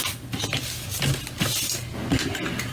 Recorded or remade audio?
recorded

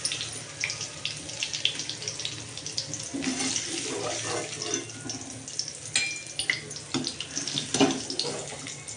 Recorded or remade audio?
recorded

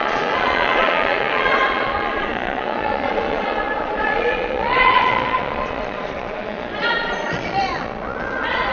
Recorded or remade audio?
remade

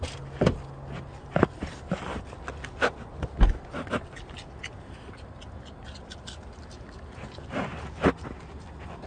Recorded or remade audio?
recorded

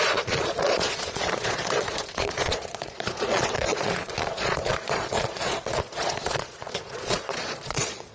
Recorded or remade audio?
remade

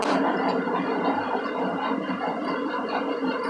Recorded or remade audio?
recorded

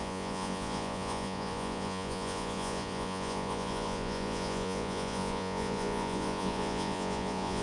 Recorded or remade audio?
remade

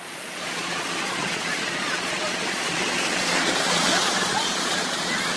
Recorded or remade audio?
remade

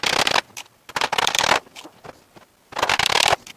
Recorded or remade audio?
recorded